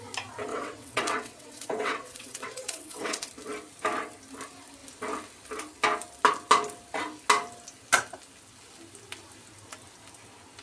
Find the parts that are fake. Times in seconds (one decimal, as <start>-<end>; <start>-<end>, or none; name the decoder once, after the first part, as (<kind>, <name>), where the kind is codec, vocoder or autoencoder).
0.5-3.3 (vocoder, WaveNeXt)

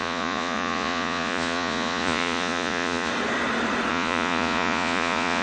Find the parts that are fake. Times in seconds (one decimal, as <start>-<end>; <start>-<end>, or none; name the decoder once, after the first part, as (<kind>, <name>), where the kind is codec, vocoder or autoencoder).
0.0-3.1 (vocoder, Vocos); 3.9-5.4

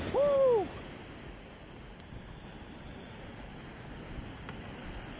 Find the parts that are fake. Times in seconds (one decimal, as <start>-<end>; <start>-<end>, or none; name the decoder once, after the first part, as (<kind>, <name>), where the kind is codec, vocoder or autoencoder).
2.9-3.5 (vocoder, Vocos)

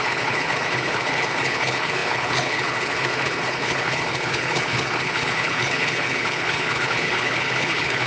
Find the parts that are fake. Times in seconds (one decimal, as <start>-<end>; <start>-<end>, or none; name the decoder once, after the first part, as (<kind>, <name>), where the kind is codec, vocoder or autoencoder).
0.0-8.1 (codec, HILCodec)

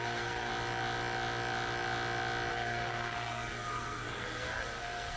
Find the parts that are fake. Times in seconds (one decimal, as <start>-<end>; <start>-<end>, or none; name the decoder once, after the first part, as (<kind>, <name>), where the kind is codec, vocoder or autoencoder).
0.0-0.5 (codec, SNAC); 2.5-5.2

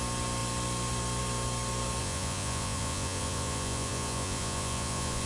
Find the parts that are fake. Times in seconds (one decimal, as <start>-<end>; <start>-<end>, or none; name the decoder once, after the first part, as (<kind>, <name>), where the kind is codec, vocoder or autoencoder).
2.0-5.3 (vocoder, Vocos)

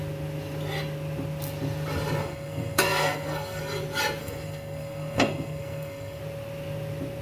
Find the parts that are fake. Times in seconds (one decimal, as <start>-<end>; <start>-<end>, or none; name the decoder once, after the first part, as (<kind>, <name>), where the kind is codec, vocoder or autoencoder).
2.2-3.6 (codec, SNAC); 4.2-6.2